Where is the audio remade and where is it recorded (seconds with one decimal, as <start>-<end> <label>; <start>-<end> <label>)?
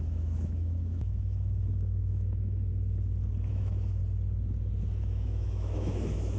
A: 0.0-2.7 remade; 2.7-3.5 recorded; 3.5-4.0 remade; 4.0-5.0 recorded; 5.0-6.4 remade